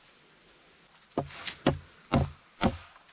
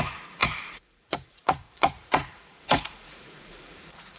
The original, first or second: first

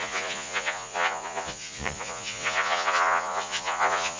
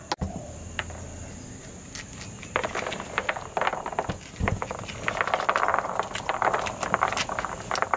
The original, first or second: second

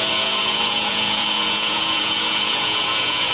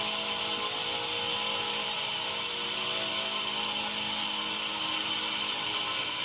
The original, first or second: second